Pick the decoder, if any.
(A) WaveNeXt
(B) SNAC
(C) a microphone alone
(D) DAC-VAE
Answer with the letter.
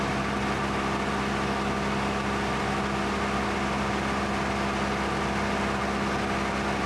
C